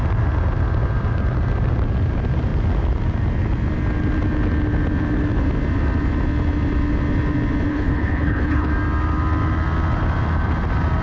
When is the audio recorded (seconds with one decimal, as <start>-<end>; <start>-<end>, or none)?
0.0-7.7; 8.7-11.0